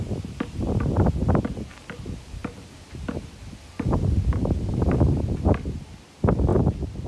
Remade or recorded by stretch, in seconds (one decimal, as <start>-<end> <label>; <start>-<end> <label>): 0.0-7.1 recorded